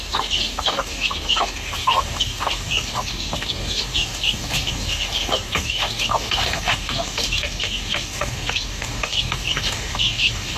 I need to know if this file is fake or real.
fake